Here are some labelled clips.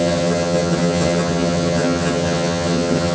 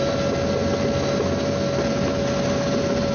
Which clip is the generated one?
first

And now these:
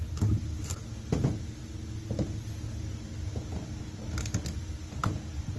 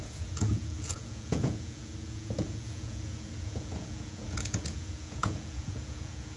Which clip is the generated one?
second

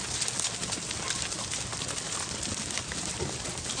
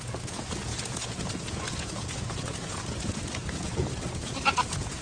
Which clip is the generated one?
second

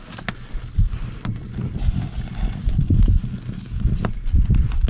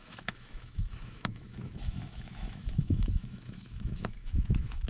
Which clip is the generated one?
second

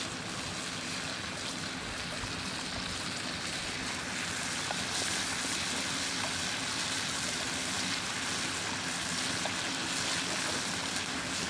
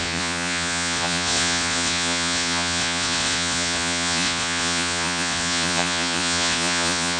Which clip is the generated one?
second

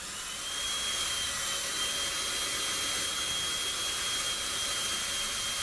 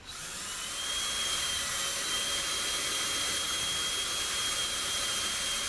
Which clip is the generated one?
second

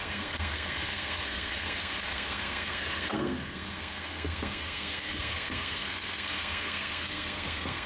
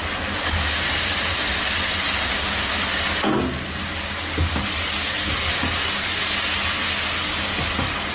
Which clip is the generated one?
first